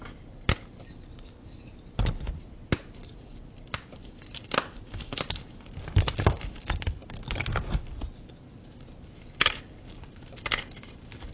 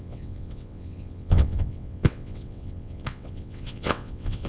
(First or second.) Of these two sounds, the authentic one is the first